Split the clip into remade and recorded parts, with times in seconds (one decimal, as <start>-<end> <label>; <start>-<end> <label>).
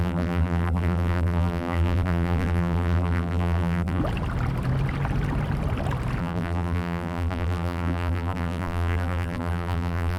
0.0-4.0 remade; 4.0-6.2 recorded; 6.2-10.2 remade